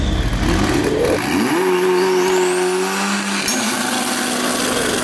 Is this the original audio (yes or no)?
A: yes